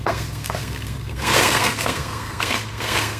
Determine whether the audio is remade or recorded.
remade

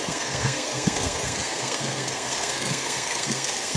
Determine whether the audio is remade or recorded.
remade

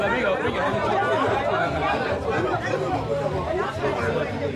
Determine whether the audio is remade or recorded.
recorded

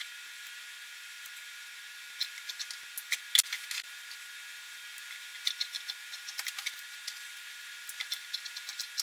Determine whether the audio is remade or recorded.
recorded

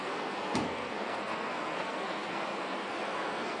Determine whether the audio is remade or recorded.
remade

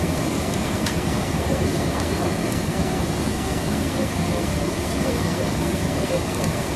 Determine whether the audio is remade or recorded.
remade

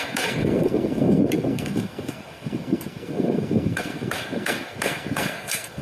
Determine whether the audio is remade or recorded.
remade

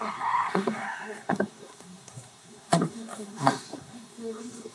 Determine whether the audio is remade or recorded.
remade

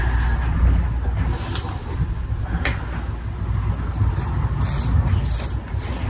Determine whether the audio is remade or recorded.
recorded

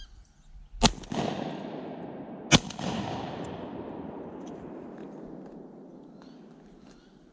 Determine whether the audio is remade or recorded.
recorded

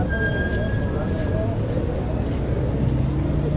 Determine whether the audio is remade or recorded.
recorded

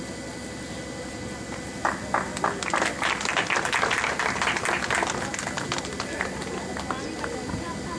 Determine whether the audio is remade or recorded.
recorded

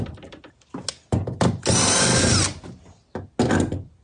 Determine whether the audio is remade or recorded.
recorded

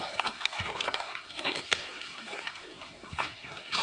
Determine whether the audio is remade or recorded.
remade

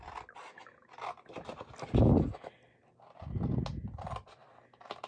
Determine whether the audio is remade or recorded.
recorded